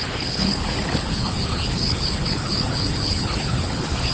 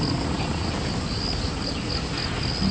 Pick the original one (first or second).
second